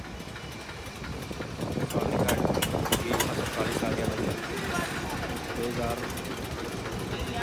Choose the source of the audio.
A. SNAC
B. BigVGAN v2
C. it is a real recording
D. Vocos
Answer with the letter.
C